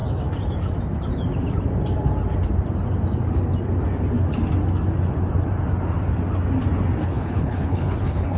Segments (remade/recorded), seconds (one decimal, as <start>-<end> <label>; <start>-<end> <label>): 0.0-7.0 recorded; 7.0-8.4 remade